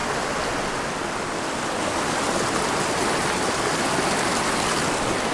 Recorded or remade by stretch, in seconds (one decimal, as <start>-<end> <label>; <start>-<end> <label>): 0.0-5.3 recorded